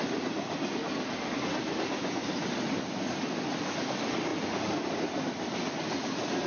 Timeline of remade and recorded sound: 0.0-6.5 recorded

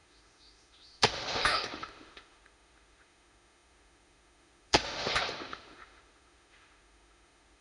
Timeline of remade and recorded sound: 0.0-7.6 remade

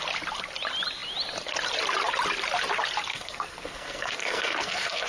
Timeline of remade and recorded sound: 0.0-3.1 recorded; 3.1-5.1 remade

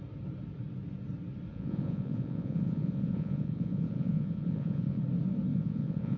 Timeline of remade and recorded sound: 0.0-1.5 recorded; 1.5-5.0 remade; 5.0-5.5 recorded; 5.5-6.2 remade

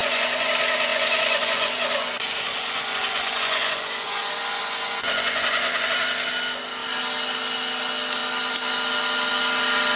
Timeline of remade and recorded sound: 0.0-0.5 remade; 0.5-0.9 recorded; 0.9-5.9 remade; 5.9-9.9 recorded